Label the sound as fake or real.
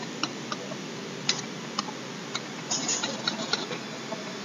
real